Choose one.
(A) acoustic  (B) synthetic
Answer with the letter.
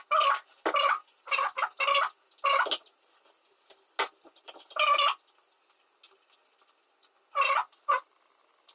A